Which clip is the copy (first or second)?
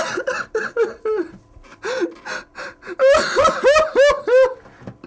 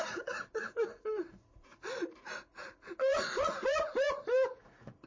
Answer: second